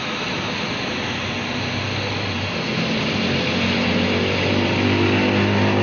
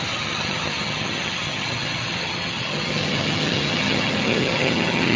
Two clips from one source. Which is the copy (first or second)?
second